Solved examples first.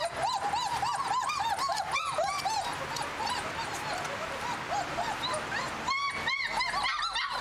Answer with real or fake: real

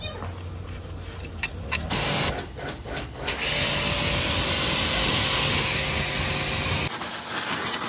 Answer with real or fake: real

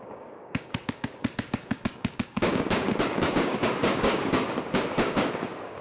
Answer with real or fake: fake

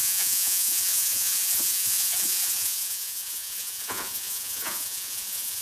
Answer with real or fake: fake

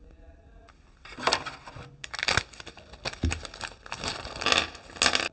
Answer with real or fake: real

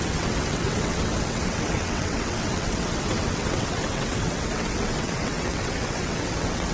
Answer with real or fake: fake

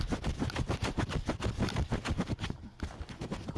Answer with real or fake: real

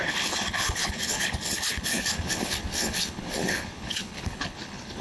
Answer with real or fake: fake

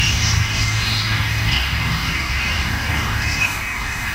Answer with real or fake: fake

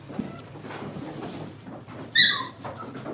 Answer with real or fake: real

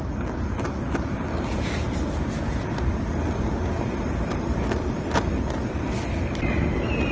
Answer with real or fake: real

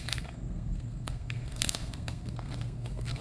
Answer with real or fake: fake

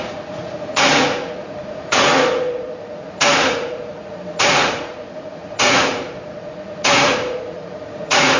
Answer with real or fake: fake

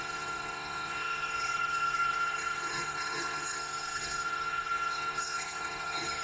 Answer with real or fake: fake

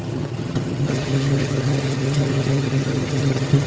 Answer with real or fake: fake